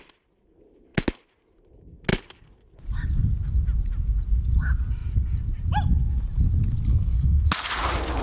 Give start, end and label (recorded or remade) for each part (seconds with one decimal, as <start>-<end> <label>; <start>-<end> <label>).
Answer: 0.0-6.9 recorded; 6.9-7.5 remade; 7.5-8.2 recorded